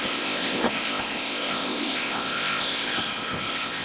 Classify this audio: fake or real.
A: fake